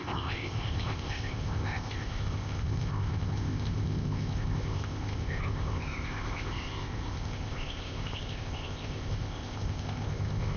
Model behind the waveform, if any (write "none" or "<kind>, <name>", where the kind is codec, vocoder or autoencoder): codec, ZipCodec